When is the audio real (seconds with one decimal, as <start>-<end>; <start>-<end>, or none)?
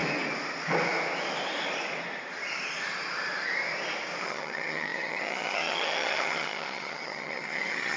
0.0-4.2